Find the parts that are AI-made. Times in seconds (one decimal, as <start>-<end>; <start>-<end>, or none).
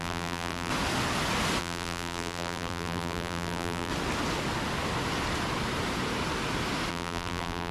0.0-0.7; 1.6-3.9; 6.9-7.7